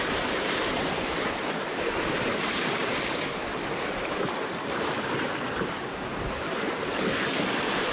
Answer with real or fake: fake